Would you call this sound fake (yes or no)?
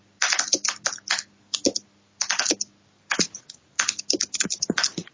no